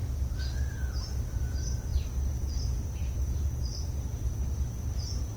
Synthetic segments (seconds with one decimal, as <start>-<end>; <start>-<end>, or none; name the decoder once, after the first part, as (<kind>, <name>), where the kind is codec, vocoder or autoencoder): 1.9-5.4 (vocoder, BigVGAN v2)